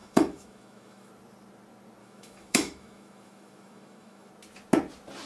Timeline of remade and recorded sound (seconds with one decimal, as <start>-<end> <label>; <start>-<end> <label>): 0.0-1.1 remade; 1.1-2.0 recorded; 2.0-4.3 remade; 4.3-5.3 recorded